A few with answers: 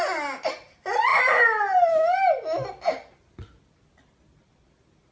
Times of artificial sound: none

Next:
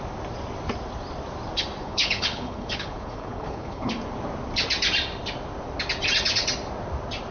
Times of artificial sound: 1.8-3.9 (codec, HILCodec)